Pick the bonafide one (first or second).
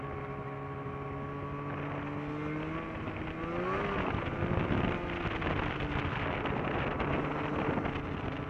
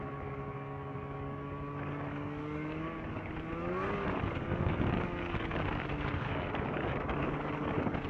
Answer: first